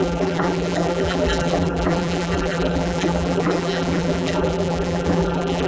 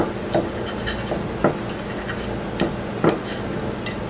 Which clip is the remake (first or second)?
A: first